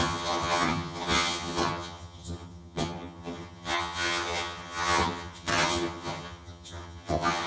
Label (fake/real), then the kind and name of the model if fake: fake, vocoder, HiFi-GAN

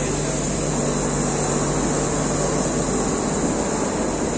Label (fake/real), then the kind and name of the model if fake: real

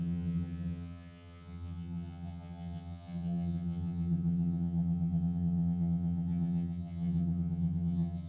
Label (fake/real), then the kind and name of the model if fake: fake, vocoder, HiFi-GAN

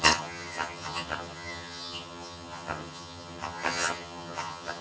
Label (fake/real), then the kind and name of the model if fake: fake, vocoder, HiFi-GAN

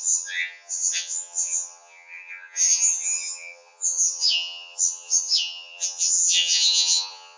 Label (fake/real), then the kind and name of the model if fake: fake, vocoder, HiFi-GAN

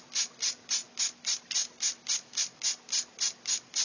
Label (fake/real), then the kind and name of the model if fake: real